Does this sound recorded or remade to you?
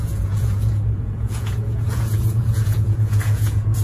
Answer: remade